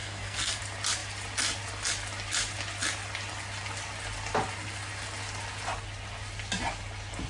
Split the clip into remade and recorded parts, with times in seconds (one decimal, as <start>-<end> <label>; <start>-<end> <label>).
0.0-0.6 remade; 0.6-7.3 recorded